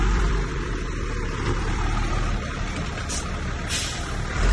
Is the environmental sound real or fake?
fake